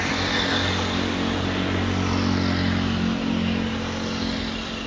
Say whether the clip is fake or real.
real